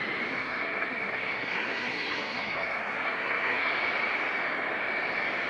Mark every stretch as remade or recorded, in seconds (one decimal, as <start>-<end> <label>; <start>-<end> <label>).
0.0-0.4 recorded; 0.4-3.7 remade; 3.7-5.5 recorded